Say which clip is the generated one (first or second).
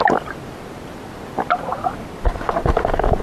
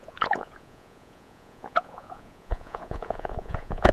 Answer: second